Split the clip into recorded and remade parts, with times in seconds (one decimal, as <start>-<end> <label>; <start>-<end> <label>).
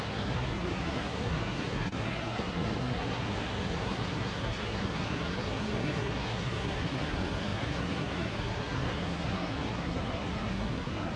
0.0-11.2 remade